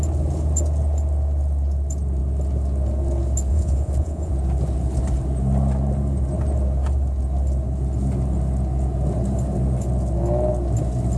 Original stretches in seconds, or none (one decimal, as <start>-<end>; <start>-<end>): 0.0-3.5; 4.3-11.2